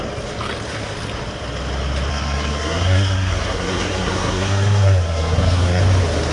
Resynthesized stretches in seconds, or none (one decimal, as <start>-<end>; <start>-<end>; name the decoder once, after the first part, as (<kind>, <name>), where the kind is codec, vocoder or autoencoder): 2.1-5.8 (codec, SNAC)

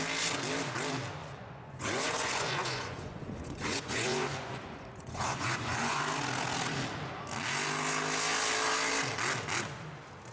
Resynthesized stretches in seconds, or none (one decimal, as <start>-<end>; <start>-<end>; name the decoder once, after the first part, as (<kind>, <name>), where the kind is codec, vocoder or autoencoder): 1.2-6.0 (vocoder, Vocos)

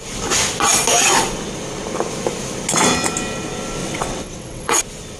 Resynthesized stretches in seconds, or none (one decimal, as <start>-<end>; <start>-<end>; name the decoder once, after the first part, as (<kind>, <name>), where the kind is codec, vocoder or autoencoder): 3.8-4.8 (vocoder, WaveNeXt)

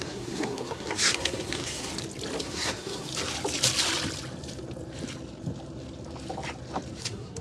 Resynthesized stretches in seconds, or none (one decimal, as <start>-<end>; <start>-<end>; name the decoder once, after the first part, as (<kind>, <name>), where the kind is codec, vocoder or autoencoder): 0.0-1.9 (codec, SNAC); 2.4-3.1; 7.0-7.4

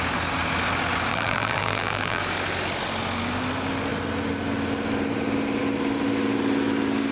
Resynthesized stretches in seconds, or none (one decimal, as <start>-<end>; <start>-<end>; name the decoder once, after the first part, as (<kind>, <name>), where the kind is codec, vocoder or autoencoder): 1.1-2.2 (vocoder, BigVGAN v2)

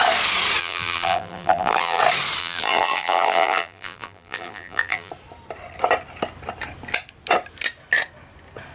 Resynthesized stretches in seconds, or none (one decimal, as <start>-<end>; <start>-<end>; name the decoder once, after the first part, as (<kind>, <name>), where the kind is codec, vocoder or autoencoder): 0.6-2.0 (vocoder, BigVGAN v2); 2.4-5.1

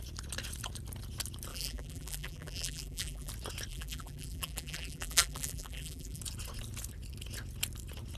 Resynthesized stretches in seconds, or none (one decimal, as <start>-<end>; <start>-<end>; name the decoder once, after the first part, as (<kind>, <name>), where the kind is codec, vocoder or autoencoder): 1.5-3.3 (vocoder, BigVGAN v2); 3.7-6.2

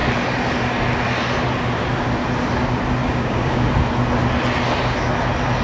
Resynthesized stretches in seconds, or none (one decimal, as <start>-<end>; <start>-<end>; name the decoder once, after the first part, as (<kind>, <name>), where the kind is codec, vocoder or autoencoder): 3.0-3.7 (codec, DAC)